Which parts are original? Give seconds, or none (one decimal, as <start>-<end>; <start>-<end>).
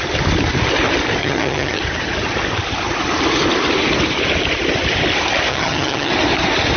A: 0.0-1.2; 1.8-5.5; 6.1-6.8